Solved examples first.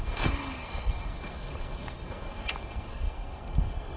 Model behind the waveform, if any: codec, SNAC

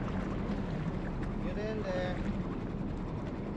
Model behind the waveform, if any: none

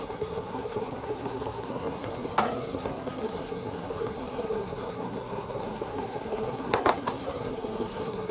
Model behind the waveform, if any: codec, SNAC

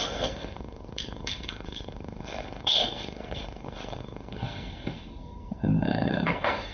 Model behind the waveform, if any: codec, SNAC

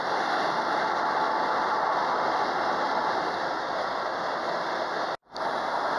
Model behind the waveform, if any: none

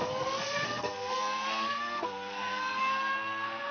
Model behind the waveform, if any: codec, SNAC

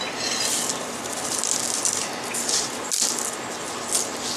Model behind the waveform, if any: none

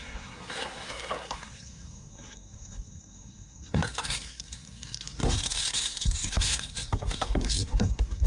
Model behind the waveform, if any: codec, SNAC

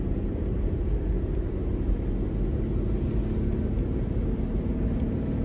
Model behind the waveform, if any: none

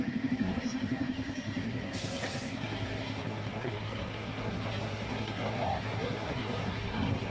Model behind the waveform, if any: codec, SNAC